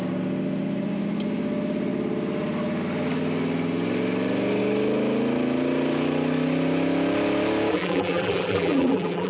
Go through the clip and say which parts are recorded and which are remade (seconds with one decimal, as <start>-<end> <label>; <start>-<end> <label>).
0.0-7.7 recorded; 7.7-9.3 remade